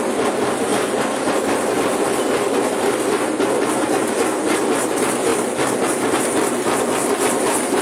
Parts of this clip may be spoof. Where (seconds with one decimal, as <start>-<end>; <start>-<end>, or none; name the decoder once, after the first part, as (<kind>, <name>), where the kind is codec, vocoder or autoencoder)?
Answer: none